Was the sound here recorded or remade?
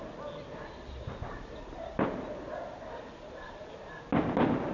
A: recorded